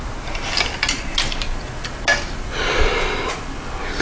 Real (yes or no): yes